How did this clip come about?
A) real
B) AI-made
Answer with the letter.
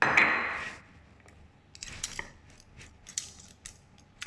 A